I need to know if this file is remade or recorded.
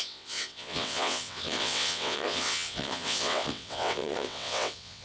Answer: remade